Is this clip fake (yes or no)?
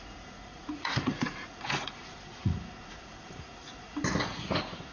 yes